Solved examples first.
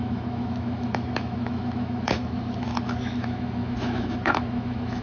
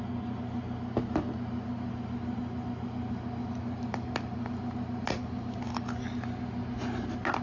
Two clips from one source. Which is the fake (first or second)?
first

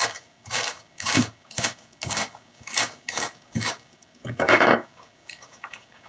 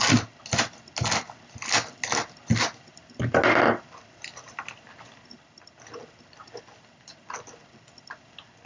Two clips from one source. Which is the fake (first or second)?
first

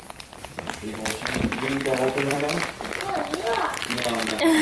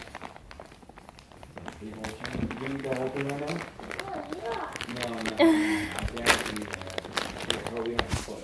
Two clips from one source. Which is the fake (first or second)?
first